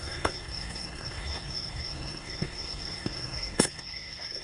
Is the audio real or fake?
fake